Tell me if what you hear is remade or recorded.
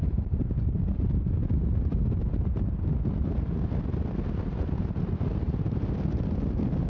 recorded